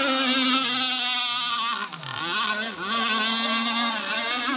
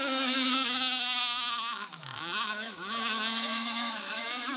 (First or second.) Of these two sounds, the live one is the first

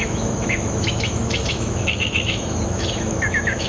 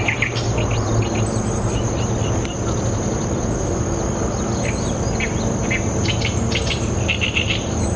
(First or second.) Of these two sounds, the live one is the second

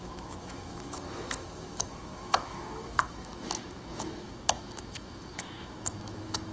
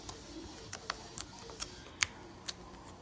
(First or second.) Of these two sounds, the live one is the second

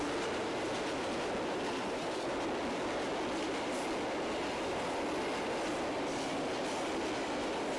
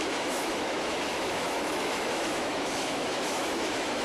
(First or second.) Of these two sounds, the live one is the first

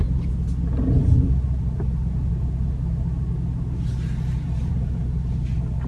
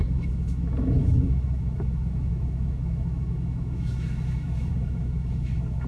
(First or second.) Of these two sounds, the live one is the first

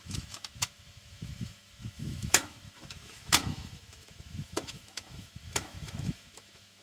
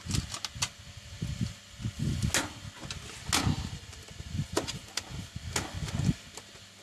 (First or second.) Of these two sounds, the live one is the second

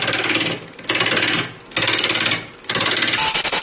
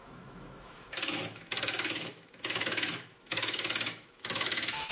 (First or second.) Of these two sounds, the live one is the first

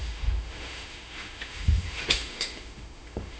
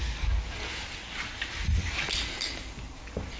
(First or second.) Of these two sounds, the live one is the second